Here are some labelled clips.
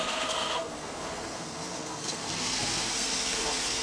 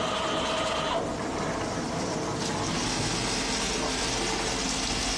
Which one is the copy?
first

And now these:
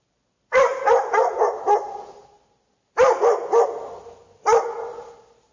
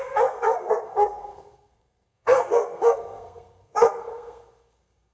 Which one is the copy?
second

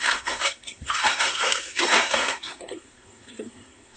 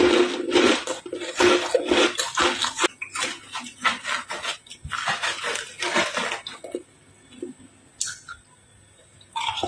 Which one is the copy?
first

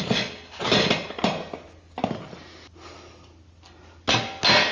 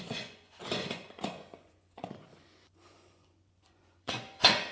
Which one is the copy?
second